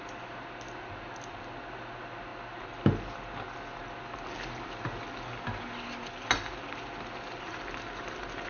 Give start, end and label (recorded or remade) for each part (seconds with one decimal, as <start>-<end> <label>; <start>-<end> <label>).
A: 0.0-8.5 recorded